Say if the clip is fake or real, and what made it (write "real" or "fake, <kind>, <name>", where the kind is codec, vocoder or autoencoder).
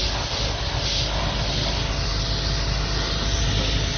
real